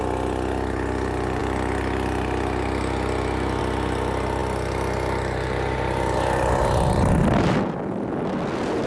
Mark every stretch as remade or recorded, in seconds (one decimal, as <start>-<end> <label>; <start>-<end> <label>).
0.0-8.9 recorded